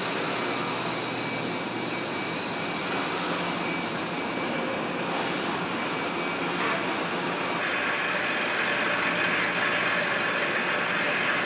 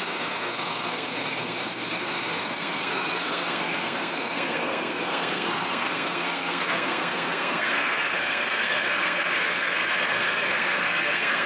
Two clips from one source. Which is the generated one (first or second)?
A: second